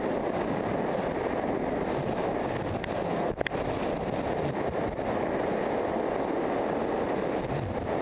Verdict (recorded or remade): recorded